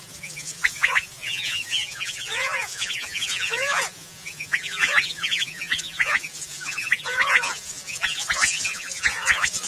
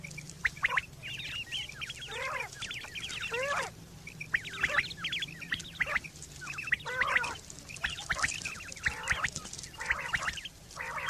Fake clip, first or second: first